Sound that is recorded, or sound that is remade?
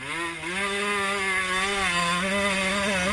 recorded